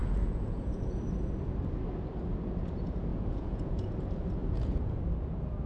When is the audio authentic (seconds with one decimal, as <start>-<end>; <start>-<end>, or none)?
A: 1.0-3.1; 3.9-4.4; 5.0-5.7